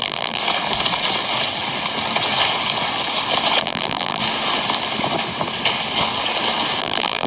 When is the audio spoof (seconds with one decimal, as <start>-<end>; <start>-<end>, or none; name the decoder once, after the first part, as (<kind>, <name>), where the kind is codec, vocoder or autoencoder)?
0.0-0.4 (vocoder, BigVGAN v2); 3.6-4.2; 6.8-7.3